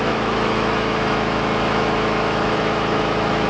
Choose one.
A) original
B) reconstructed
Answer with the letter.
B